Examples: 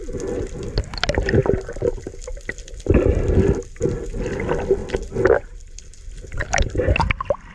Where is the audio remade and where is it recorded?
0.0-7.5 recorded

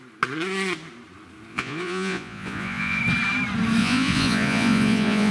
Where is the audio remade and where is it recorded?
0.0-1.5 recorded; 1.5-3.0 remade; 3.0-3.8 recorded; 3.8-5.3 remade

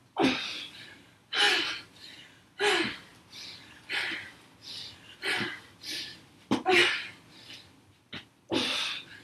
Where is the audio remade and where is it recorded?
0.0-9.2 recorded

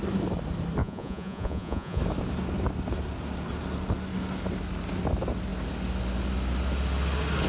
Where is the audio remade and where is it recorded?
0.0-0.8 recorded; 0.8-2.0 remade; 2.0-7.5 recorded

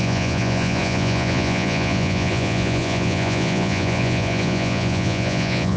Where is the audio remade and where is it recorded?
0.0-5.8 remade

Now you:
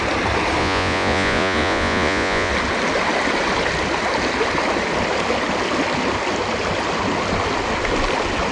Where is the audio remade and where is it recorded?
0.0-0.6 recorded; 0.6-2.5 remade; 2.5-8.5 recorded

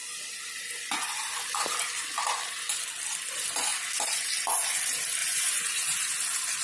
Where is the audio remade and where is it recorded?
0.0-5.2 recorded; 5.2-6.0 remade; 6.0-6.6 recorded